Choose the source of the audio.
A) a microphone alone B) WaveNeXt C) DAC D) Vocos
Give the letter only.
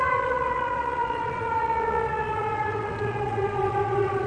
D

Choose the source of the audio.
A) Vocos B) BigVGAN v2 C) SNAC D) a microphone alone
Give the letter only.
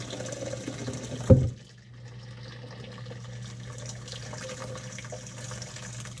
D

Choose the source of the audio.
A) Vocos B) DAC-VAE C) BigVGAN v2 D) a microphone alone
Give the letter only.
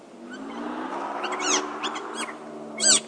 D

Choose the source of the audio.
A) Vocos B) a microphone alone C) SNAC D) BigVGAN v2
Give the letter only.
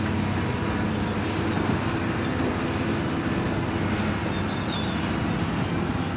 B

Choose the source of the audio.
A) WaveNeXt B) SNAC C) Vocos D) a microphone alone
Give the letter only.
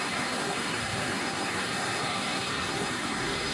B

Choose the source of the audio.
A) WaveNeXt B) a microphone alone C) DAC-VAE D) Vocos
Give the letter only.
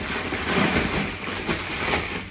B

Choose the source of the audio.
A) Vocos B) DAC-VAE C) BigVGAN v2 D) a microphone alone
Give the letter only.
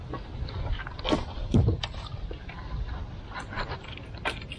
D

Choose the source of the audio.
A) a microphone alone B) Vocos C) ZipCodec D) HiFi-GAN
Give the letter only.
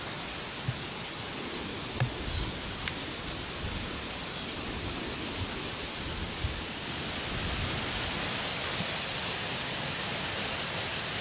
A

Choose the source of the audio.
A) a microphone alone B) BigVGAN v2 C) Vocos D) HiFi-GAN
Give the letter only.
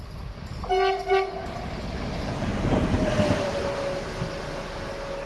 A